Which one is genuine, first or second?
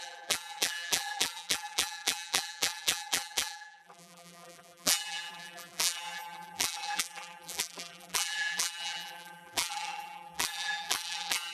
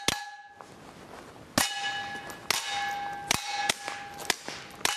second